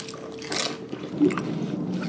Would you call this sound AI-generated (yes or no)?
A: no